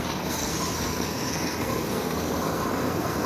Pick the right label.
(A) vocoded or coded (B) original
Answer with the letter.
A